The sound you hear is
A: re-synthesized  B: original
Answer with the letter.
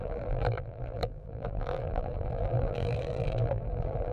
A